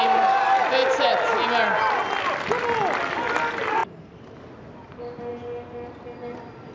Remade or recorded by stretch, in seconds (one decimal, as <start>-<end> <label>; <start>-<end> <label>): 0.0-6.7 recorded